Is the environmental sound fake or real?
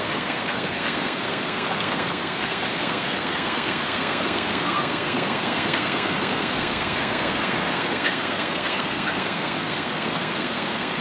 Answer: fake